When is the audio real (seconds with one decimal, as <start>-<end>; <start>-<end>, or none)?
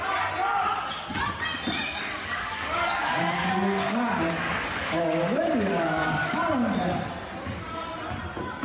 0.0-2.2; 6.4-8.6